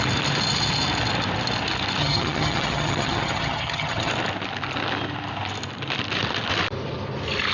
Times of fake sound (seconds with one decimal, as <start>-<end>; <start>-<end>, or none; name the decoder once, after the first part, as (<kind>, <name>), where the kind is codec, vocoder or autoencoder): 2.0-4.1 (vocoder, HiFi-GAN)